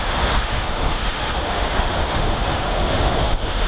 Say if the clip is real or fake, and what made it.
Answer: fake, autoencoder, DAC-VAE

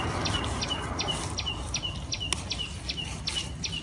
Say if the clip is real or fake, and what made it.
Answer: real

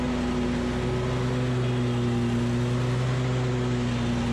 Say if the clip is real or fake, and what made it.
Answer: real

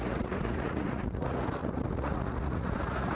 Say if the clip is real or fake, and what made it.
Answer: fake, vocoder, Vocos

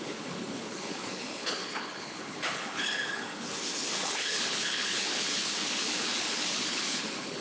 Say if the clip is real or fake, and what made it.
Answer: fake, codec, HILCodec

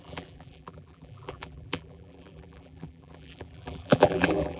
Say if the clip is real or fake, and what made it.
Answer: fake, vocoder, BigVGAN v2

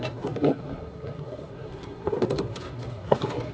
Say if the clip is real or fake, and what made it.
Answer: fake, codec, SNAC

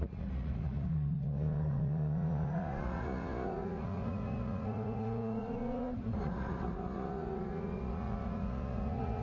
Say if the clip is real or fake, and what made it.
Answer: fake, vocoder, Vocos